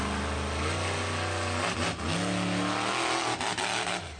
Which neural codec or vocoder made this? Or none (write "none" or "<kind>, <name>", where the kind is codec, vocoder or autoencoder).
none